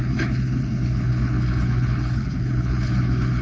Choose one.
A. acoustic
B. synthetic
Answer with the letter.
B